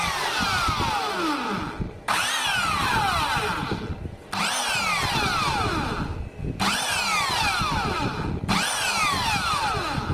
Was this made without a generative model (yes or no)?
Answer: yes